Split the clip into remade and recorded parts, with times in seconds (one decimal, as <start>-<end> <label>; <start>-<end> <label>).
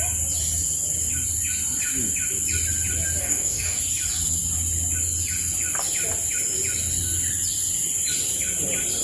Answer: 0.0-3.2 recorded; 3.2-3.8 remade; 3.8-9.0 recorded